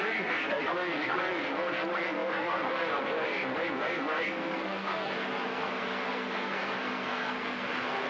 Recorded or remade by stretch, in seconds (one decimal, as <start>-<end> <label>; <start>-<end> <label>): 0.0-8.1 remade